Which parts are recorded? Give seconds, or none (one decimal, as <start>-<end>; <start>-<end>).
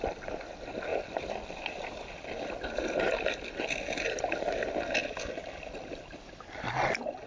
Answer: 0.0-7.3